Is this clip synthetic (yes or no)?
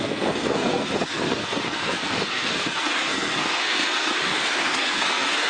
yes